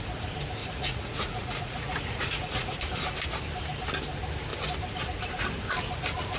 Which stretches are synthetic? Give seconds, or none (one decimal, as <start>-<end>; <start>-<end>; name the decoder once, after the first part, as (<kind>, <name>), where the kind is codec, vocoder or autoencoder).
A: 0.6-2.8 (vocoder, Vocos)